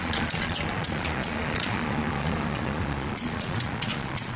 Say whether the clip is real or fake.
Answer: fake